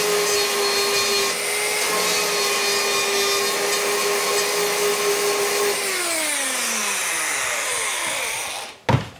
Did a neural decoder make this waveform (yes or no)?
no